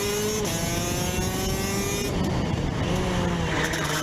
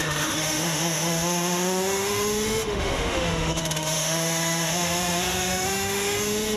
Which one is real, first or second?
first